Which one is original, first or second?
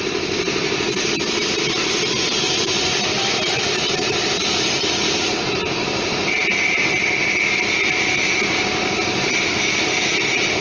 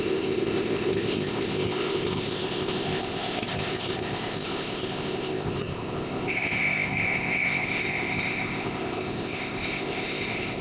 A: first